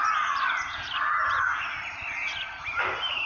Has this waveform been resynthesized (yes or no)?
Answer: no